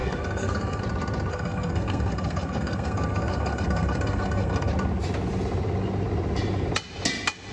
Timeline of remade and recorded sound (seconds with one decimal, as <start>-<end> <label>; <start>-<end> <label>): 0.0-0.8 remade; 0.8-1.3 recorded; 1.3-4.7 remade; 4.7-7.5 recorded